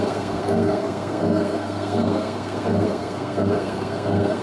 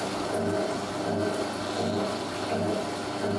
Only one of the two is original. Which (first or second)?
second